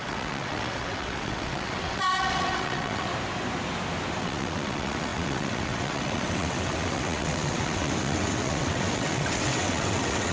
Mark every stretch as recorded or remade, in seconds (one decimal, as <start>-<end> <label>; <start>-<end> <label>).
0.0-3.1 remade; 3.1-4.2 recorded; 4.2-10.3 remade